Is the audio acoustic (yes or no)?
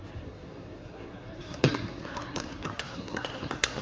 no